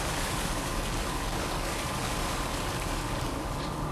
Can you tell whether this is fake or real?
fake